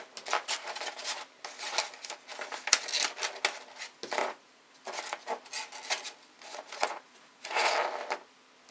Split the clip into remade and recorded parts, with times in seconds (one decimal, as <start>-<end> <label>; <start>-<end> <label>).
0.0-4.2 recorded; 4.2-4.7 remade; 4.7-6.5 recorded; 6.5-7.7 remade; 7.7-8.7 recorded